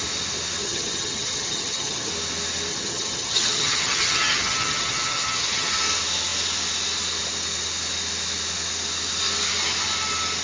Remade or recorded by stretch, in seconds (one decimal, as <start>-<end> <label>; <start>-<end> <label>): 0.0-0.6 recorded; 0.6-2.1 remade; 2.1-2.7 recorded; 2.7-5.8 remade; 5.8-10.4 recorded